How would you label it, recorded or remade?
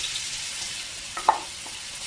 remade